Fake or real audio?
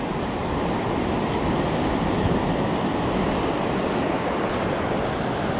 real